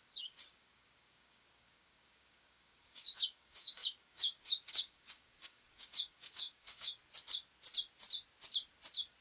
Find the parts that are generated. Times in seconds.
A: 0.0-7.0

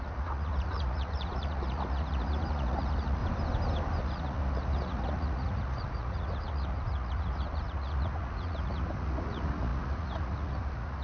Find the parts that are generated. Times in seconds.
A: 0.0-3.2; 4.0-11.0

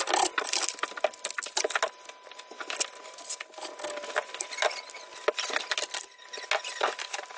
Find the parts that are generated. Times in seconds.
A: none